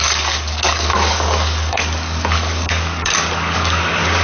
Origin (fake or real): fake